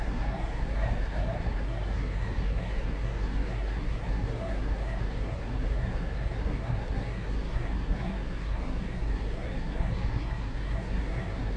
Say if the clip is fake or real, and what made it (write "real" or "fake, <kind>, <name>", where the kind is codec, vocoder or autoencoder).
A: fake, codec, SNAC